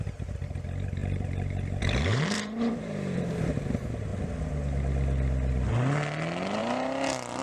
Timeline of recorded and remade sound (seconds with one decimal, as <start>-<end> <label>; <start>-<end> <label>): 0.0-1.0 recorded; 1.0-3.5 remade; 3.5-7.4 recorded